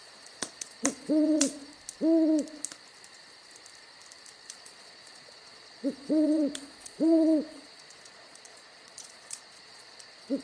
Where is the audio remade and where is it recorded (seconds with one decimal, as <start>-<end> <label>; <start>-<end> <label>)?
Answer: 0.0-1.7 remade; 1.7-4.5 recorded; 4.5-10.4 remade